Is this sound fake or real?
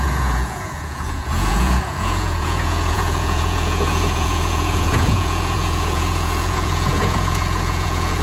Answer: fake